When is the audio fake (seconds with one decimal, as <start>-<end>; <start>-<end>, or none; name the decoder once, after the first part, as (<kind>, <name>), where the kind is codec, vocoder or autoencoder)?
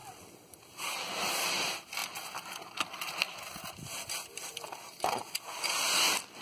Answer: none